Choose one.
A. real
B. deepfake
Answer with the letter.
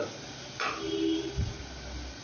A